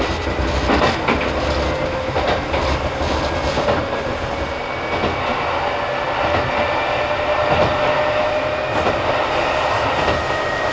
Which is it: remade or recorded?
recorded